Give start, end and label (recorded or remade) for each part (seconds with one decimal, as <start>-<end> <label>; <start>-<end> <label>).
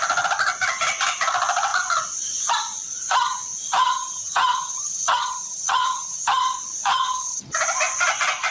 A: 0.0-3.8 recorded; 3.8-6.4 remade; 6.4-6.9 recorded; 6.9-7.5 remade; 7.5-8.5 recorded